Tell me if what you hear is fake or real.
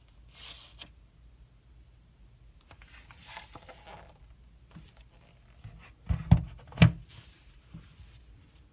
real